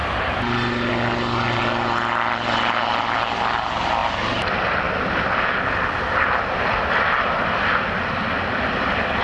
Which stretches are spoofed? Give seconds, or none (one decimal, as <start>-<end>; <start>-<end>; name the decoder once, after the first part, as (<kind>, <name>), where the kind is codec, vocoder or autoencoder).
none